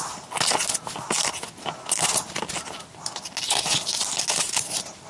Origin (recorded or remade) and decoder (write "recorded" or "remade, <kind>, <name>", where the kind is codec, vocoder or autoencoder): recorded